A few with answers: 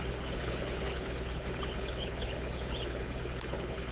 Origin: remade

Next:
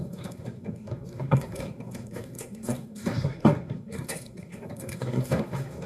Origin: remade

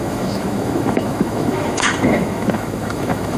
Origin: remade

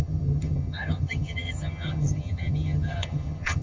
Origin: remade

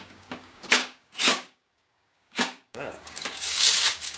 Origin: remade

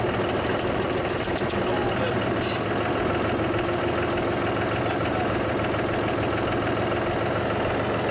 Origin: recorded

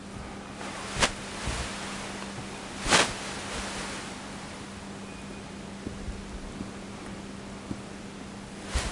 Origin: recorded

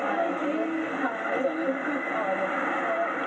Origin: recorded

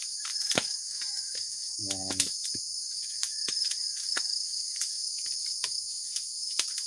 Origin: remade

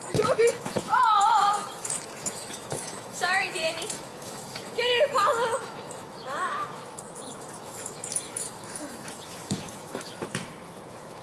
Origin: remade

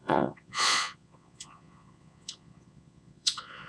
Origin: remade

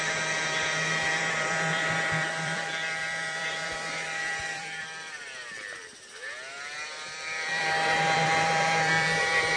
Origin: remade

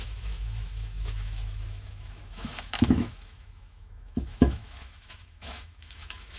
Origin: remade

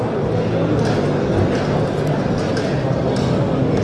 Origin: recorded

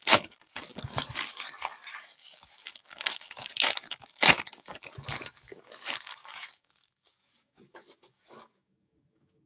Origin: remade